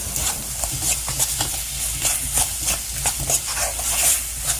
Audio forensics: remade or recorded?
recorded